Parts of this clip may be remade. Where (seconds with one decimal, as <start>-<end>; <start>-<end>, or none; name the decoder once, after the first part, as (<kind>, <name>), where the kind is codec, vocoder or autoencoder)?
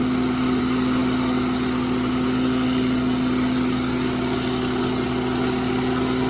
none